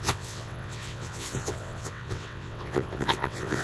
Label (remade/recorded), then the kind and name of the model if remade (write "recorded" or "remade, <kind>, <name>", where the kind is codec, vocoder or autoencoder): remade, vocoder, WaveNeXt